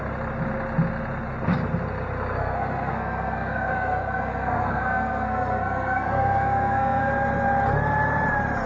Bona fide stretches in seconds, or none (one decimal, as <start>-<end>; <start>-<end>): 0.0-2.4; 7.1-8.7